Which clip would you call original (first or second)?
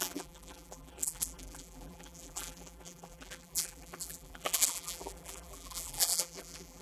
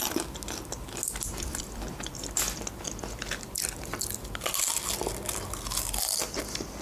second